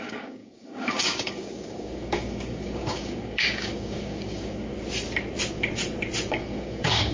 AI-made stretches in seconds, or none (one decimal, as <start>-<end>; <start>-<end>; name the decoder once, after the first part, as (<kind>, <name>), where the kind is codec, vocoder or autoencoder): 0.0-4.7 (codec, DAC); 6.3-7.1